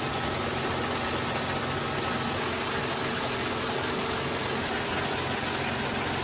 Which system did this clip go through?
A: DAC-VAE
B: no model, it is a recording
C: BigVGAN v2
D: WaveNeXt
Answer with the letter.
B